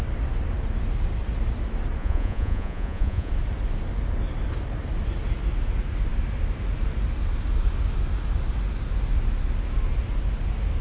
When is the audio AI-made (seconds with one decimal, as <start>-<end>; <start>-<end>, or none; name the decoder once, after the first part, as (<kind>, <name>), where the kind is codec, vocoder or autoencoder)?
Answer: 2.0-3.3 (vocoder, Vocos)